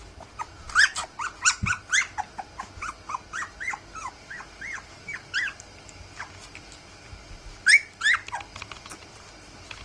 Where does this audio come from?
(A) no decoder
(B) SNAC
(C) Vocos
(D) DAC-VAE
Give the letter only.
A